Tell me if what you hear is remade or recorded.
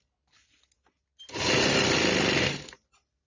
recorded